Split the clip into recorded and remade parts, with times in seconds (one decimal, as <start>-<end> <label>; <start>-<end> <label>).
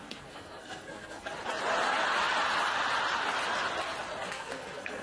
0.0-1.3 remade; 1.3-4.3 recorded; 4.3-5.0 remade